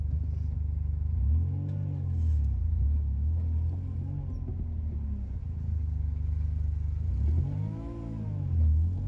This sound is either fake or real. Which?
real